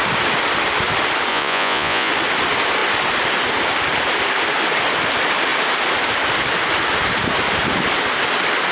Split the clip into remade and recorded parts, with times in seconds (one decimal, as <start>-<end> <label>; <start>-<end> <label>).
0.0-1.3 recorded; 1.3-2.1 remade; 2.1-8.7 recorded